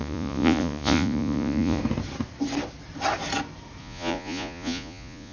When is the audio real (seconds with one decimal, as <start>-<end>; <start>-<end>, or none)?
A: 1.8-3.8